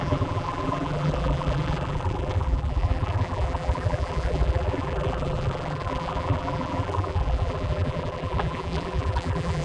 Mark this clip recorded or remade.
remade